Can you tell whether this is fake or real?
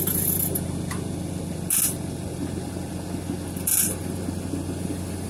real